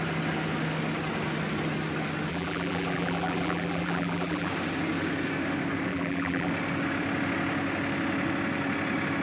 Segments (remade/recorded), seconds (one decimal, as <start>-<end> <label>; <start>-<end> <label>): 0.0-2.3 recorded; 2.3-4.5 remade; 4.5-5.9 recorded; 5.9-6.5 remade; 6.5-9.2 recorded